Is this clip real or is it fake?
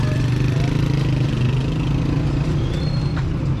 real